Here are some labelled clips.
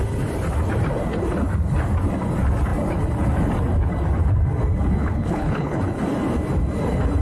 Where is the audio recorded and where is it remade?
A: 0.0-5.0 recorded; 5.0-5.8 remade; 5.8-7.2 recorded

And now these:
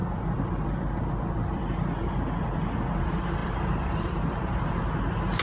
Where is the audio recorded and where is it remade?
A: 0.0-2.1 remade; 2.1-3.4 recorded; 3.4-4.8 remade; 4.8-5.4 recorded

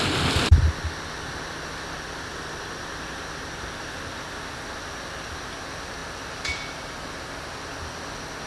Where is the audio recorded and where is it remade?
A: 0.0-8.5 recorded